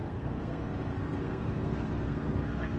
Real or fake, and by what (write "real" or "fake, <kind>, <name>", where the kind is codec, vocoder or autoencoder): fake, codec, SNAC